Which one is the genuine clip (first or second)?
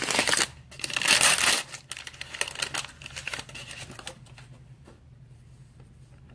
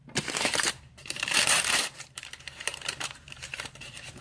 first